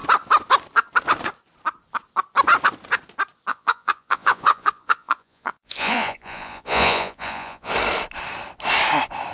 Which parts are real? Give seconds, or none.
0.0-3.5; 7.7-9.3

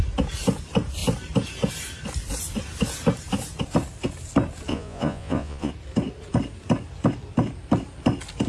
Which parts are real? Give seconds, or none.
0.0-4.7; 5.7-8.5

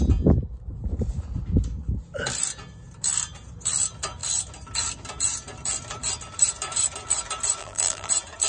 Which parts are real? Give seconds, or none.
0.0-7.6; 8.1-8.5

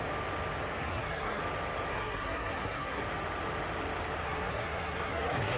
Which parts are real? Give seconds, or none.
0.0-0.8; 1.4-1.9; 3.0-4.2

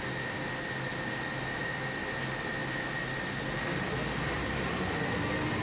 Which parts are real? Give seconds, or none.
0.0-5.6